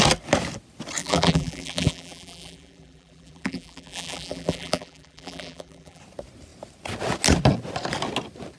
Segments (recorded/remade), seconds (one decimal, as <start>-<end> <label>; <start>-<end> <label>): 0.0-1.0 recorded; 1.0-6.0 remade; 6.0-8.6 recorded